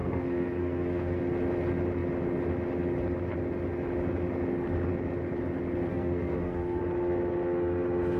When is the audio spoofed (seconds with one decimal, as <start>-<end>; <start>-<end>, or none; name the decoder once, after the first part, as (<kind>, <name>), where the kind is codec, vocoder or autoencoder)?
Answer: 0.0-1.2 (codec, SNAC); 5.9-6.8